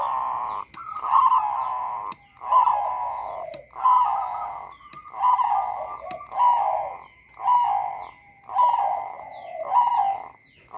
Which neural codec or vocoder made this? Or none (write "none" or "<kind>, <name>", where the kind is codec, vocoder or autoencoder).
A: none